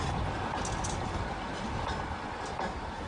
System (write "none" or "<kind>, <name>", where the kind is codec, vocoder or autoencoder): none